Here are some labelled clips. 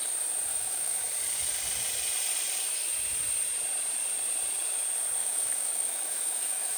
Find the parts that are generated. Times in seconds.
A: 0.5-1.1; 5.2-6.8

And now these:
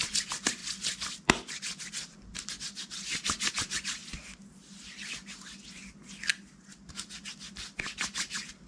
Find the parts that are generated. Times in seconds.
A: 0.6-2.5; 4.0-5.1

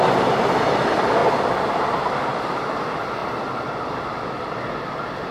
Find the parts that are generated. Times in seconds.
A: 1.2-2.4